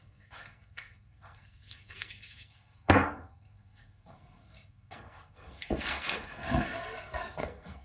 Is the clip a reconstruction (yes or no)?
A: yes